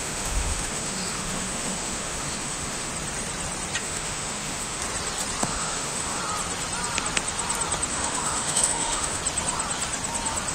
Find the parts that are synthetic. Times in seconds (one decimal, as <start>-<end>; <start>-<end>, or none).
0.0-2.9; 3.8-4.8; 5.4-6.2; 7.9-9.2